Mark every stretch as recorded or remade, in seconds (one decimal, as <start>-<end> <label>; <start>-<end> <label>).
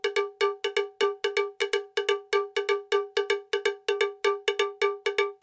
0.0-5.4 recorded